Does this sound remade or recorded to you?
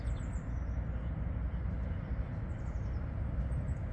recorded